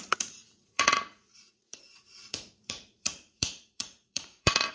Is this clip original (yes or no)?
no